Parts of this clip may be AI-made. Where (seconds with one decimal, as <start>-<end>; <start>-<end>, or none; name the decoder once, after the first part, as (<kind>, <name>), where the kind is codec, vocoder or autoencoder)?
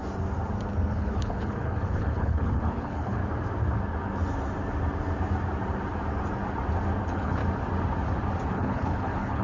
0.9-3.2 (codec, HILCodec); 7.0-7.4; 8.5-9.4